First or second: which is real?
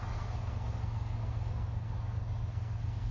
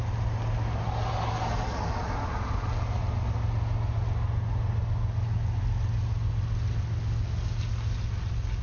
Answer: second